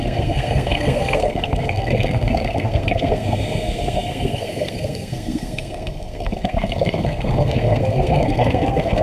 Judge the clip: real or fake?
fake